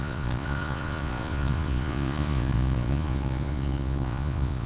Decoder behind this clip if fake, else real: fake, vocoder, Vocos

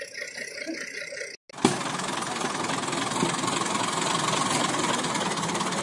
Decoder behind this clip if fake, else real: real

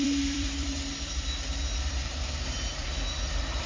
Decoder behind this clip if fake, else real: fake, vocoder, BigVGAN v2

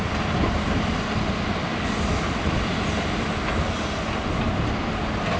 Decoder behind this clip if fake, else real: real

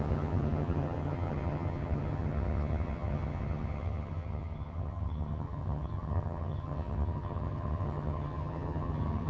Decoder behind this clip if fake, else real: fake, vocoder, HiFi-GAN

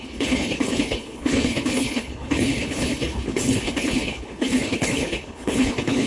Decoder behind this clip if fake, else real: fake, codec, HILCodec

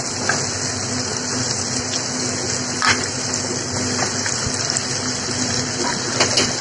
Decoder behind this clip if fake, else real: real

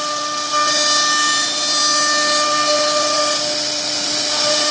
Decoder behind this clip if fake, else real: real